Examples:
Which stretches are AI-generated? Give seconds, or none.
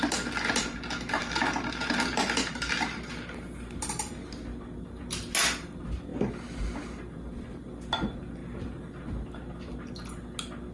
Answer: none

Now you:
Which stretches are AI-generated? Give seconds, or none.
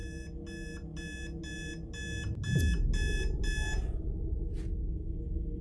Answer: none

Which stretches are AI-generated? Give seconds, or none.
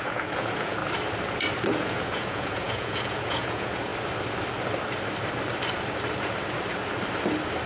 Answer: 0.0-0.8 (vocoder, Vocos); 1.7-3.9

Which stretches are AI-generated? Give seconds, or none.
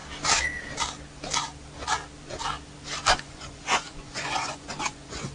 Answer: 3.2-5.3 (vocoder, Vocos)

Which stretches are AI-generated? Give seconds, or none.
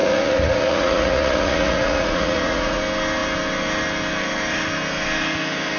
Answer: 0.0-2.8 (vocoder, Vocos)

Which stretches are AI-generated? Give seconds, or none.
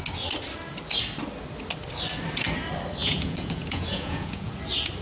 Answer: 3.0-4.5 (vocoder, Vocos)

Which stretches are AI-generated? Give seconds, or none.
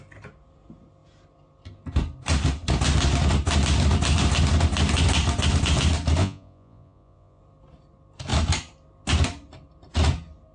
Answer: 6.2-7.4 (vocoder, Vocos)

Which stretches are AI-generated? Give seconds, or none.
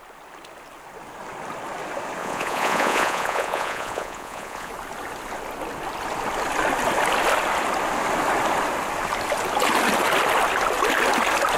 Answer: 2.2-4.7 (vocoder, Vocos)